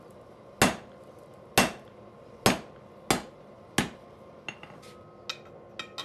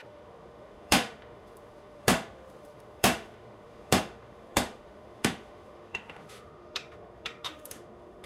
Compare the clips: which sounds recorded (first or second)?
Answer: first